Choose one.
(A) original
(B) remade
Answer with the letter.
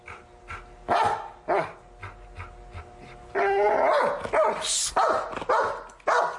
A